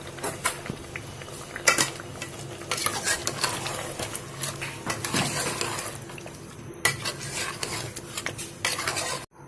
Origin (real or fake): real